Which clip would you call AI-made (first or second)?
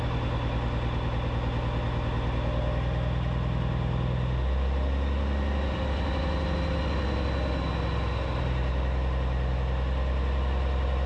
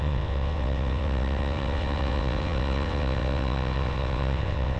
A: second